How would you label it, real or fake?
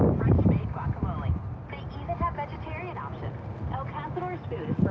real